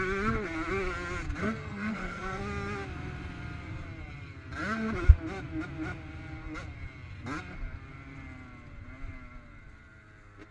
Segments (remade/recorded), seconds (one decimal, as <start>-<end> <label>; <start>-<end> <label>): 0.0-1.4 recorded; 1.4-2.4 remade; 2.4-10.5 recorded